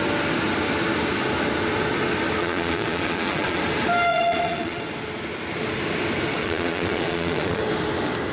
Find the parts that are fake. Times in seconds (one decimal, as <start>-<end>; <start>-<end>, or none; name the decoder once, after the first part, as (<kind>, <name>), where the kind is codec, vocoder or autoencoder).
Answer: 2.4-3.6 (vocoder, Vocos); 4.1-4.8; 6.4-7.6